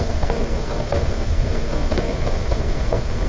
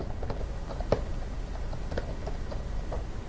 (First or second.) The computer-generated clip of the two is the first